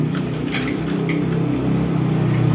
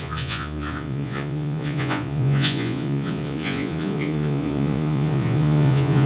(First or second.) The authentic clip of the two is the first